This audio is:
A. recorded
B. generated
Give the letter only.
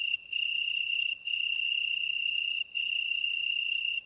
B